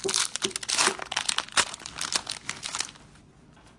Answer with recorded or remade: recorded